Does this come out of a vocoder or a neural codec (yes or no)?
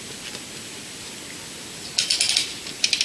no